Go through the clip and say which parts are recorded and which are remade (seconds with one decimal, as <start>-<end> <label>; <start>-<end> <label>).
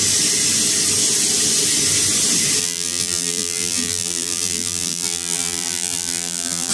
0.0-2.6 recorded; 2.6-6.7 remade